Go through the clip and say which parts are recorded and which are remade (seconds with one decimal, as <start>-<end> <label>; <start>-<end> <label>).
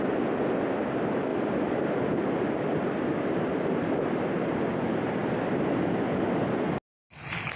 0.0-1.3 recorded; 1.3-1.8 remade; 1.8-7.6 recorded